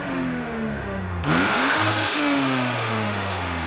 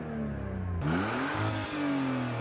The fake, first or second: first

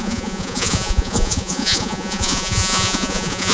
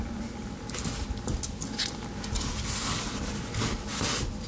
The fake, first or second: first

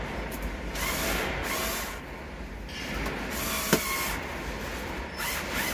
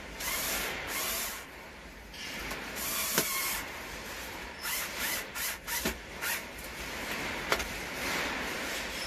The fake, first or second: second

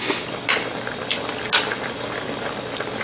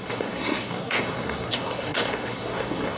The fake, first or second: second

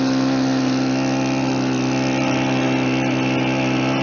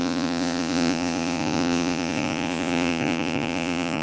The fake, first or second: second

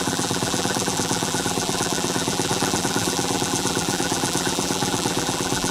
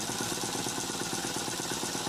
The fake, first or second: first